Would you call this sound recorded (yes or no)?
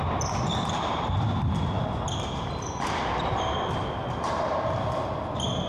yes